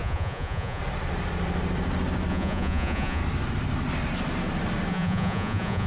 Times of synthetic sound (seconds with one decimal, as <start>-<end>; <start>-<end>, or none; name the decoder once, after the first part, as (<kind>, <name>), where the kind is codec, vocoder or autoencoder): 0.0-0.8 (vocoder, Vocos); 2.3-3.2; 4.9-5.9